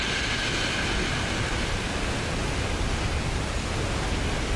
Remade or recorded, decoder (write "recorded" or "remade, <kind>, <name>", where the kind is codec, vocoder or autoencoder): recorded